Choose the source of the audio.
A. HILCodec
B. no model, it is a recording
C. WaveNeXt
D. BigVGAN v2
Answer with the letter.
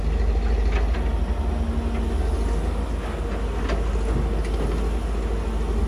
B